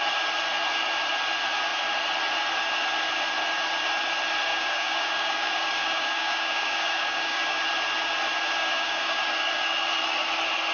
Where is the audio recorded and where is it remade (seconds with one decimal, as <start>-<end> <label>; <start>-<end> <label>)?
0.0-4.5 recorded; 4.5-7.6 remade; 7.6-8.6 recorded; 8.6-9.2 remade; 9.2-10.7 recorded

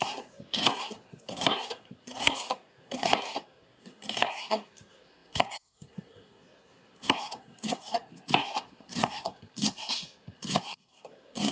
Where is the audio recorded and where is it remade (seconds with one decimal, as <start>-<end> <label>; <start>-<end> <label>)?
0.0-11.5 remade

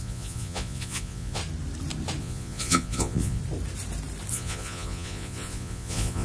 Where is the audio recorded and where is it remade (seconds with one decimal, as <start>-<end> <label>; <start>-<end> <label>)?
0.0-1.4 remade; 1.4-2.2 recorded; 2.2-3.4 remade; 3.4-4.3 recorded; 4.3-6.2 remade

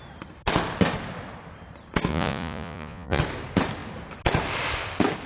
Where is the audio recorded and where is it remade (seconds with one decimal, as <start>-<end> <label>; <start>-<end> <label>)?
0.0-2.1 recorded; 2.1-3.2 remade; 3.2-5.3 recorded

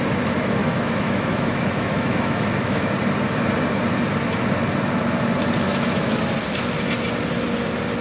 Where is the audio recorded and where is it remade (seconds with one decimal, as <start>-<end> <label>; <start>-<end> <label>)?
0.0-0.6 recorded; 0.6-2.9 remade; 2.9-5.7 recorded; 5.7-6.2 remade; 6.2-8.0 recorded

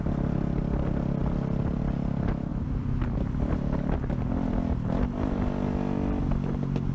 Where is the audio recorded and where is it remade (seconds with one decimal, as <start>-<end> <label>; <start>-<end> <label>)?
0.0-6.9 recorded